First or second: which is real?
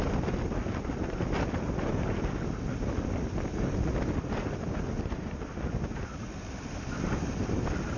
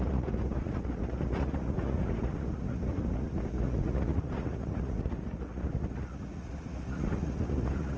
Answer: first